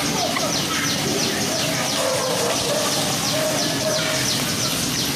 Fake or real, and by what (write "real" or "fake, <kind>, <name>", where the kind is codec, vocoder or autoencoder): real